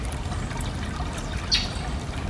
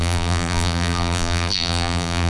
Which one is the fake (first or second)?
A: second